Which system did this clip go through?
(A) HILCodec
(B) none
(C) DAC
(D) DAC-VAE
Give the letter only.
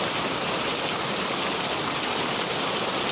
B